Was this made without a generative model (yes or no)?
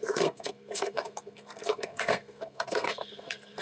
no